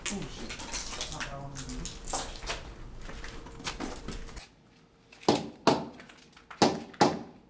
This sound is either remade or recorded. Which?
recorded